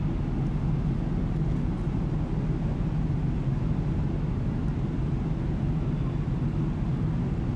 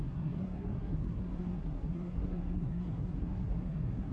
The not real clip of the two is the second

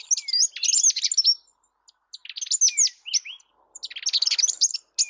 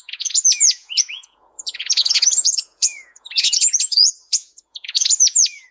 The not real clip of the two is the second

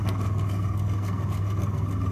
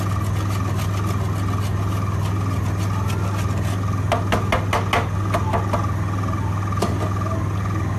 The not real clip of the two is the first